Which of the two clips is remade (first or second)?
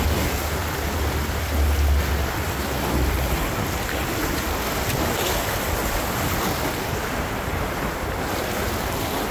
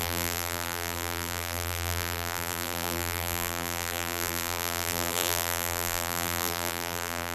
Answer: second